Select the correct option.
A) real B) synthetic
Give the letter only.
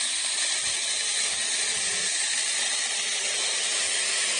A